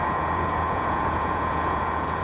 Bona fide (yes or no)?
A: no